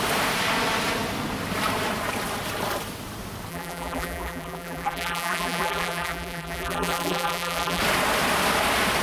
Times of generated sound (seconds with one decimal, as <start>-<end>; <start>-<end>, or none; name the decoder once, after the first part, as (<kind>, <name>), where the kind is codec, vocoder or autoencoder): 3.5-7.8 (vocoder, BigVGAN v2)

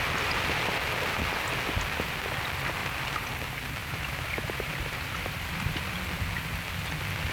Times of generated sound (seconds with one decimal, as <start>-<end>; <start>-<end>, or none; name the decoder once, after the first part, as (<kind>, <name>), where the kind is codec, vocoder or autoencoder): 2.8-3.3 (vocoder, BigVGAN v2); 3.8-5.7